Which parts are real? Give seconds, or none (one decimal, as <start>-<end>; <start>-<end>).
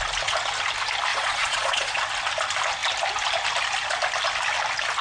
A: 0.0-1.1; 2.0-5.0